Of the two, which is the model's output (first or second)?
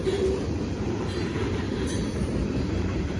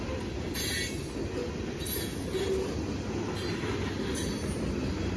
first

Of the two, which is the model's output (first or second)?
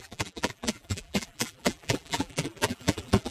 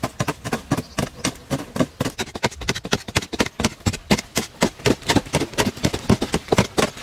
first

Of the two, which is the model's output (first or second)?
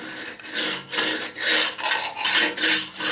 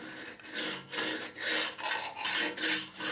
first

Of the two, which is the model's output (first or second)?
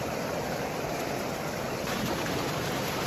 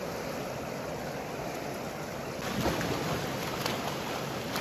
first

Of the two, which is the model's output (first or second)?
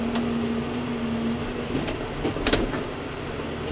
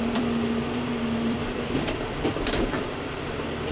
second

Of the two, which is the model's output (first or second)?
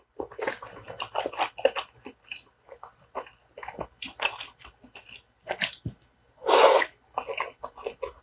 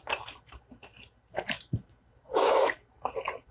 second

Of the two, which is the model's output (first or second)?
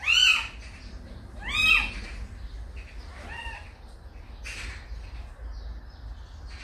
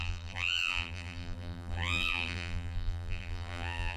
second